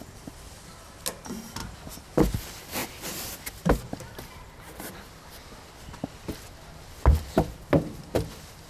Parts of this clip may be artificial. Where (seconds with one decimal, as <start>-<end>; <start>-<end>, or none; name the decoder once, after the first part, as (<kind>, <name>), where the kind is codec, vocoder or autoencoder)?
none